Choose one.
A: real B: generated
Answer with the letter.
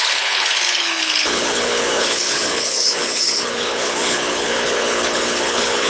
B